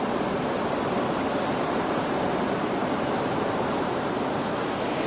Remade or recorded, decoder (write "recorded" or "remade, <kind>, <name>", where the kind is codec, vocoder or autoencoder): remade, vocoder, BigVGAN v2